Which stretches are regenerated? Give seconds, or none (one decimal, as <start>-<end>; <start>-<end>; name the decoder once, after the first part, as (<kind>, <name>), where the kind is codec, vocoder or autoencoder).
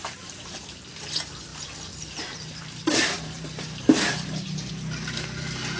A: 0.0-0.8 (vocoder, BigVGAN v2); 1.5-4.7